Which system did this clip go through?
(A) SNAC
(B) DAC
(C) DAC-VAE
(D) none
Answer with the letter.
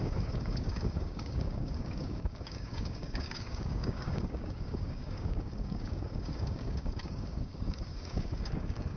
B